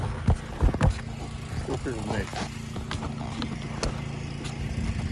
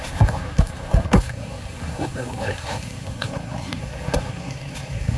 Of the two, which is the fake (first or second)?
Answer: second